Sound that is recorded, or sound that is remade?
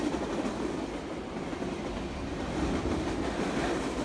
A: recorded